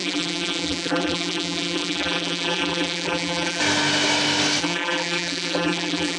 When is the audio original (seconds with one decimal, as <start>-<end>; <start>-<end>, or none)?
3.6-4.6